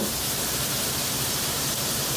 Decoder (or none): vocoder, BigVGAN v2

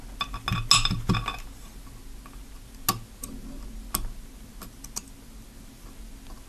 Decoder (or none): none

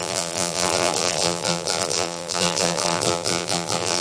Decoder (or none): vocoder, BigVGAN v2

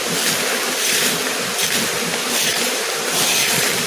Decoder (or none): vocoder, BigVGAN v2